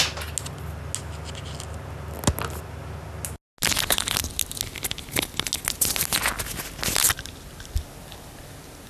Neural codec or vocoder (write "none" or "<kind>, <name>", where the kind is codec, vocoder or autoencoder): none